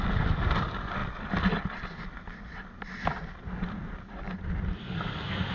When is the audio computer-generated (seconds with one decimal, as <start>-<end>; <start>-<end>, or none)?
4.8-5.5